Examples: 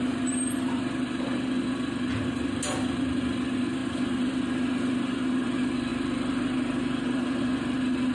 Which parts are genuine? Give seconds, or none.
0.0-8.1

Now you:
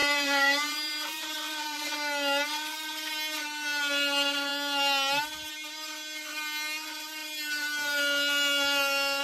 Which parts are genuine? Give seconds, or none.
1.9-9.2

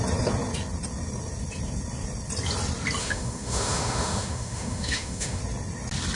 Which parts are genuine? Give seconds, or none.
0.0-3.0; 5.4-6.1

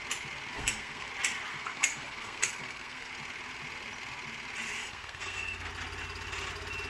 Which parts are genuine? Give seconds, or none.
0.0-0.5; 1.1-1.5; 3.1-4.8; 5.7-6.9

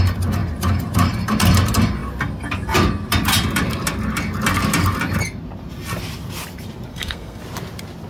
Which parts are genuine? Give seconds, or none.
0.0-6.9; 7.4-8.1

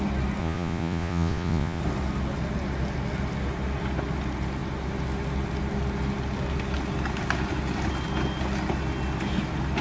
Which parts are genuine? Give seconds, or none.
0.0-0.4; 1.8-9.8